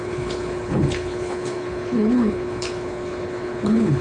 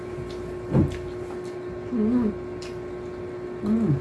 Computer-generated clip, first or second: first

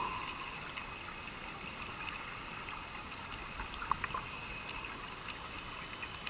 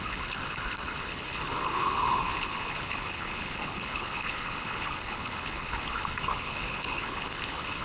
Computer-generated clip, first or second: second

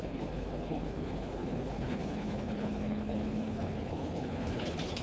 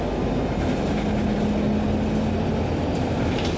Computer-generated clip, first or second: first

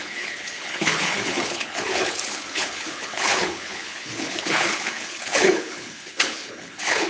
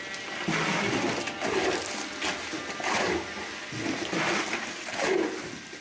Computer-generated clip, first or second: first